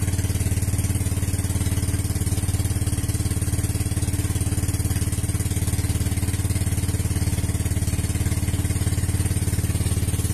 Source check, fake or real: real